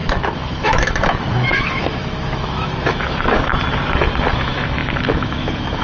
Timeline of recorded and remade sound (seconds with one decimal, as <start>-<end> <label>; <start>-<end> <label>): 0.0-3.5 remade; 3.5-4.3 recorded; 4.3-5.8 remade